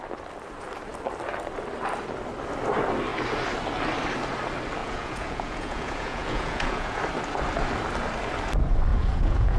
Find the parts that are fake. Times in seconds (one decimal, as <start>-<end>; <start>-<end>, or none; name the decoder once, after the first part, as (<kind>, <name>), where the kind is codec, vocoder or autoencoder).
4.8-7.0 (vocoder, Vocos); 8.9-9.6